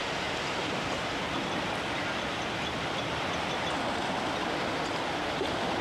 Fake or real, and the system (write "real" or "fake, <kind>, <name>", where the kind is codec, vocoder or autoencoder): real